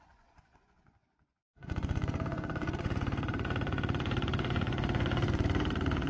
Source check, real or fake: fake